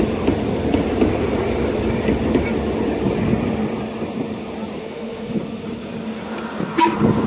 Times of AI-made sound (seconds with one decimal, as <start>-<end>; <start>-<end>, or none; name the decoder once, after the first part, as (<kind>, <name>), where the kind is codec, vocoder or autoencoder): 4.8-5.4 (autoencoder, DAC-VAE)